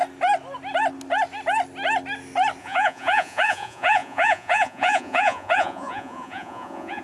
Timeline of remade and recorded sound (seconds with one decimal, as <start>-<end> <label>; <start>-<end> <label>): 0.0-2.6 recorded; 2.6-7.0 remade